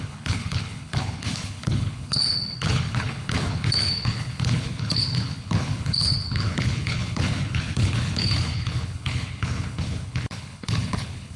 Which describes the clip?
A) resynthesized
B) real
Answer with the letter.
A